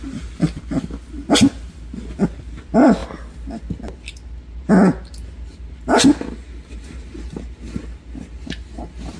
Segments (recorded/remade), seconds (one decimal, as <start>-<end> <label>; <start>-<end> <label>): 0.0-9.2 recorded